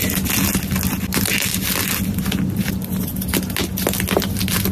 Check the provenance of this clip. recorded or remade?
recorded